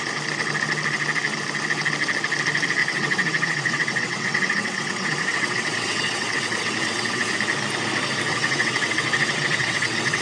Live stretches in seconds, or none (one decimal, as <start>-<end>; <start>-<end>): 0.0-2.8; 7.3-8.3